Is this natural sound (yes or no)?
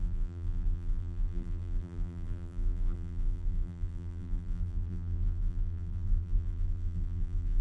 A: no